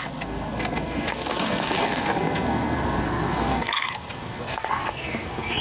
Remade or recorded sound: remade